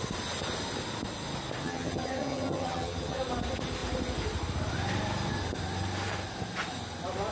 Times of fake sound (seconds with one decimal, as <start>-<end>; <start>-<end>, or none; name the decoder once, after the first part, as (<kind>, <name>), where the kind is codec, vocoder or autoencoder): 1.6-3.2 (vocoder, HiFi-GAN)